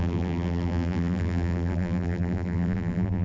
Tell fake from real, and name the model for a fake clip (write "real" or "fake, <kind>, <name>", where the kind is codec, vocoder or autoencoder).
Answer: fake, vocoder, BigVGAN v2